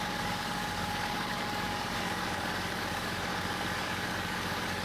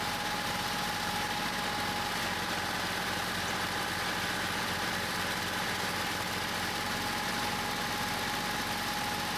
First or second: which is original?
second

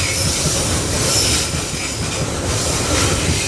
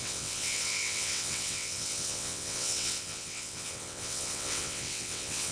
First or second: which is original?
first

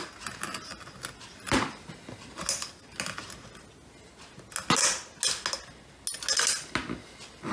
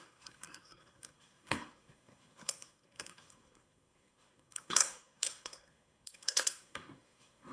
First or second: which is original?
first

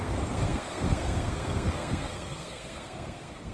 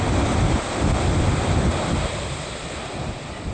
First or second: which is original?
second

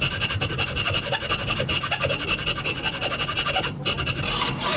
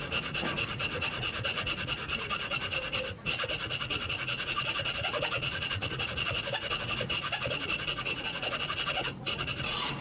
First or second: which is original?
first